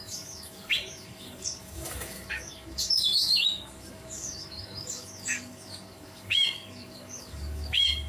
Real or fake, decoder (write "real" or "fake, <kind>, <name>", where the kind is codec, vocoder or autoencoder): fake, codec, DAC